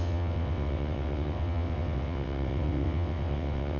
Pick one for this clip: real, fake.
fake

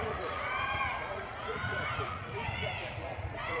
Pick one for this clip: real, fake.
fake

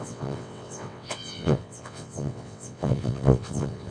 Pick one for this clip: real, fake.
fake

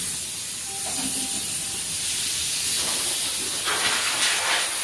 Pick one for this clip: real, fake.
real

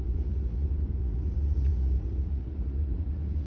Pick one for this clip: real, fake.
fake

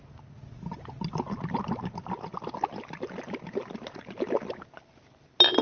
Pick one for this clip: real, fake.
real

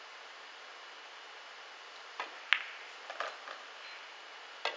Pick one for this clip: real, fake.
real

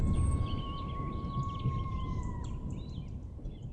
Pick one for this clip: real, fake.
fake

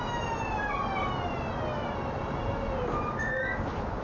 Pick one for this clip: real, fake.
real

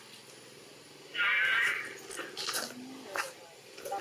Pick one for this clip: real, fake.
real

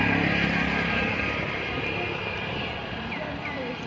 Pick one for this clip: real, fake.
real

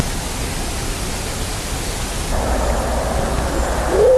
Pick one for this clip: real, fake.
real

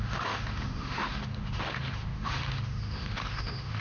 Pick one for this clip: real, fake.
fake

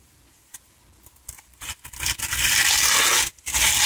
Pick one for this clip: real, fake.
real